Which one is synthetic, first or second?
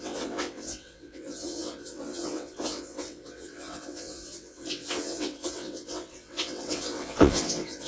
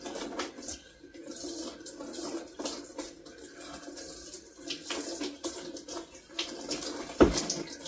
first